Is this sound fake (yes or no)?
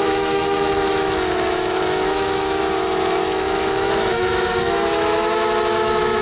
yes